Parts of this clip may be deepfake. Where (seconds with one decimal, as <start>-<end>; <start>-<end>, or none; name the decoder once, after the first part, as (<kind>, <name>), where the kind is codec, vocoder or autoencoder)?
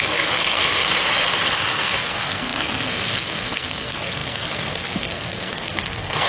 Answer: 0.0-0.9 (codec, SNAC); 1.8-6.3